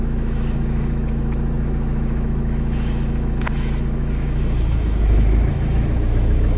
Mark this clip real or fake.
fake